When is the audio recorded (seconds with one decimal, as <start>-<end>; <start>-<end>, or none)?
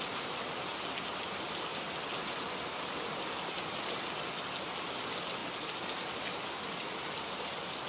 0.0-7.9